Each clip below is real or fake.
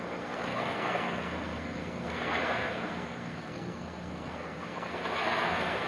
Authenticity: fake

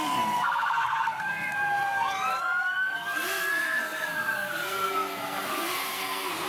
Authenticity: fake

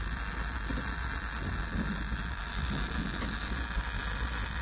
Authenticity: real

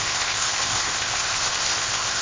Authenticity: fake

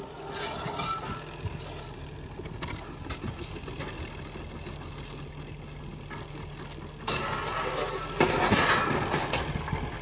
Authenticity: real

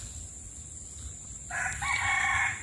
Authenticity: real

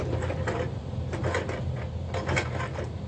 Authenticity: real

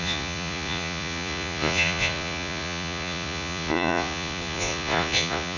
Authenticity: fake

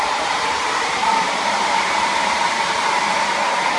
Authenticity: fake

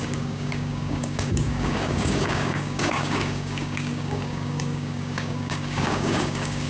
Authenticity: fake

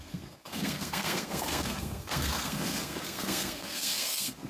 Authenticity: fake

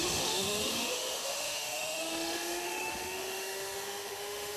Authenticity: fake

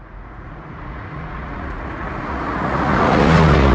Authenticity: fake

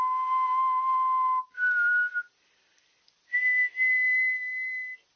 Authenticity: real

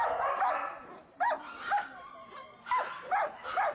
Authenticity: real